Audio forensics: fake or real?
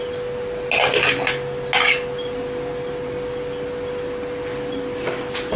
real